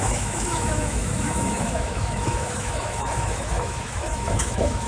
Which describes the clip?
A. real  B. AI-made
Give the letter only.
B